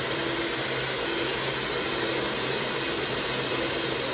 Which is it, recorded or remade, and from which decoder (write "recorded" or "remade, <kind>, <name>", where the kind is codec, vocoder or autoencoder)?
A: recorded